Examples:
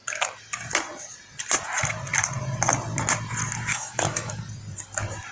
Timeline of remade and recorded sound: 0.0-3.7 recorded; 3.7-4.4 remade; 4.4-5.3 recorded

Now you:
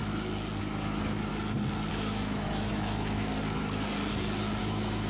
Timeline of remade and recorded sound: 0.0-0.6 recorded; 0.6-1.3 remade; 1.3-1.9 recorded; 1.9-3.3 remade; 3.3-4.6 recorded; 4.6-5.1 remade

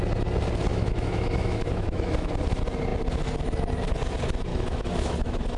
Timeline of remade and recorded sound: 0.0-0.7 recorded; 0.7-2.3 remade; 2.3-4.5 recorded; 4.5-5.6 remade